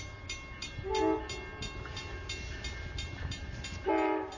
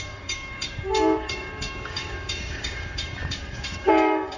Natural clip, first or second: first